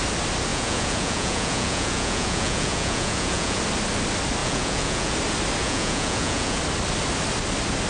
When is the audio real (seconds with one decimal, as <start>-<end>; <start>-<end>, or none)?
0.0-0.5; 3.6-4.4; 5.1-5.6; 6.6-7.9